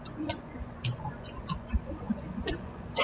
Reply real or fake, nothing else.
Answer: fake